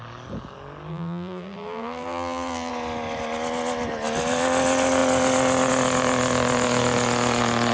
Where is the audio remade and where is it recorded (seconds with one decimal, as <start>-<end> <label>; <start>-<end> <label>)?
0.0-0.9 recorded; 0.9-2.7 remade; 2.7-7.7 recorded

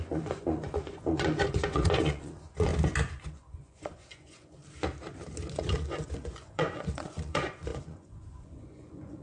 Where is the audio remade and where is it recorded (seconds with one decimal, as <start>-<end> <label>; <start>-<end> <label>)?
0.0-2.7 remade; 2.7-3.2 recorded; 3.2-4.6 remade; 4.6-5.5 recorded; 5.5-9.2 remade

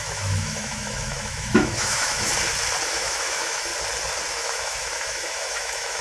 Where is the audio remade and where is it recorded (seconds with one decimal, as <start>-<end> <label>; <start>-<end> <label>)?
0.0-2.3 remade; 2.3-2.9 recorded; 2.9-3.7 remade; 3.7-4.3 recorded; 4.3-6.0 remade

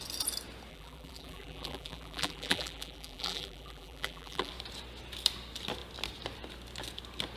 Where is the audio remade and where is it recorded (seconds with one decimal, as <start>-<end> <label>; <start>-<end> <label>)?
0.0-0.7 recorded; 0.7-4.5 remade; 4.5-7.4 recorded

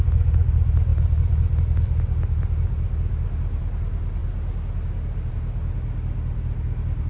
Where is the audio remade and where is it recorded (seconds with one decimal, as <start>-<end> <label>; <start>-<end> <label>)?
0.0-7.1 recorded

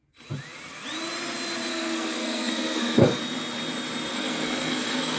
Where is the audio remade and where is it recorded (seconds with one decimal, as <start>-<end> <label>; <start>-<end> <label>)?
0.0-1.7 recorded; 1.7-3.2 remade; 3.2-4.1 recorded; 4.1-5.2 remade

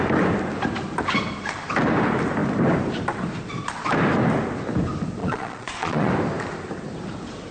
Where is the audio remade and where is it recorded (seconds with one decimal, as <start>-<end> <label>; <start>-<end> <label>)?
0.0-5.2 recorded; 5.2-6.1 remade; 6.1-7.5 recorded

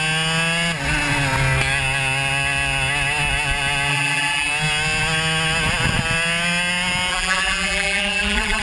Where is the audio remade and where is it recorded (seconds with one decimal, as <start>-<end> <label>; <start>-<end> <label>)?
0.0-3.9 recorded; 3.9-4.5 remade; 4.5-7.1 recorded; 7.1-8.6 remade